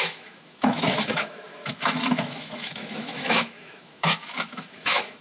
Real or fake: fake